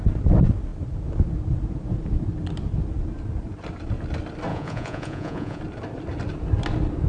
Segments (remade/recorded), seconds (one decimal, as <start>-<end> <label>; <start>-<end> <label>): 0.0-4.5 recorded; 4.5-5.6 remade; 5.6-7.1 recorded